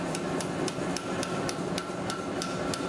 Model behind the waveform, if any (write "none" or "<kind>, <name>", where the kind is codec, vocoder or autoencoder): none